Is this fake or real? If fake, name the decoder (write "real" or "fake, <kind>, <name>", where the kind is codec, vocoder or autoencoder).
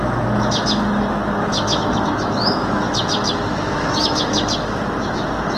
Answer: fake, autoencoder, DAC-VAE